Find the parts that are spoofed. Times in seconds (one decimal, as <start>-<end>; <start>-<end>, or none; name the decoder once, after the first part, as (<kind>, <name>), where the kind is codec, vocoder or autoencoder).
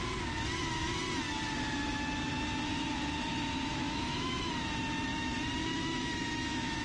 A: 3.7-4.5 (autoencoder, DAC-VAE); 5.7-6.8